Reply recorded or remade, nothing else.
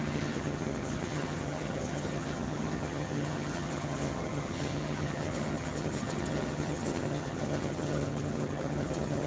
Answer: remade